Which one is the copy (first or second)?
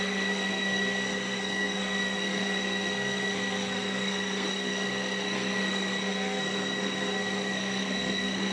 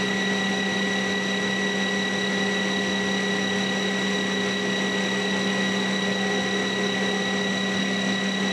first